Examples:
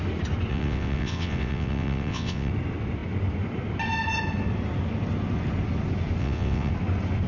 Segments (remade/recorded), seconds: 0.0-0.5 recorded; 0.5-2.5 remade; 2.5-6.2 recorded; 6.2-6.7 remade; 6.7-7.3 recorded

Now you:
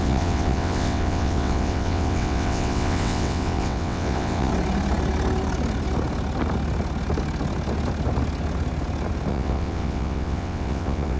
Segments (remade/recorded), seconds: 0.0-4.5 remade; 4.5-9.3 recorded; 9.3-11.2 remade

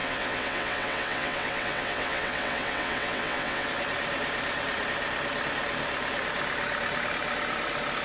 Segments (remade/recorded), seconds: 0.0-3.7 remade; 3.7-8.0 recorded

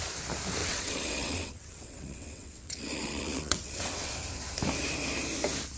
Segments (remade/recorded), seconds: 0.0-0.6 recorded; 0.6-4.1 remade; 4.1-5.8 recorded

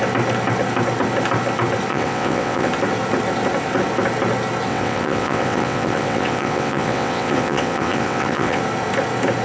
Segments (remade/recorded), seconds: 0.0-1.9 recorded; 1.9-2.7 remade; 2.7-4.7 recorded; 4.7-8.6 remade; 8.6-9.4 recorded

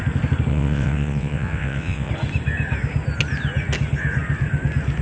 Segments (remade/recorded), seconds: 0.0-0.5 recorded; 0.5-2.1 remade; 2.1-5.0 recorded